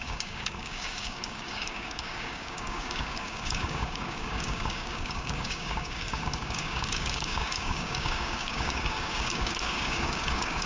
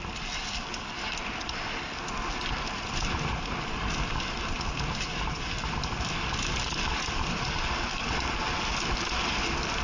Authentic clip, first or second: second